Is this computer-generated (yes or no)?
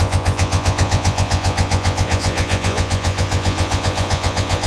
yes